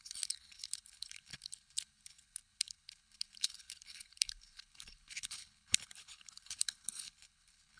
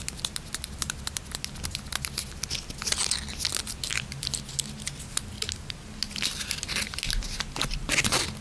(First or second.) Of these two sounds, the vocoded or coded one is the first